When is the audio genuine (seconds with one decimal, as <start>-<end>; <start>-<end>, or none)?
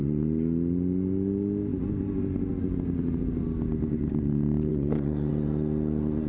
0.0-4.7; 5.3-6.3